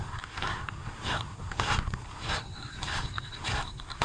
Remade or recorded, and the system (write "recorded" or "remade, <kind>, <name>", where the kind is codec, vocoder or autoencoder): remade, codec, SNAC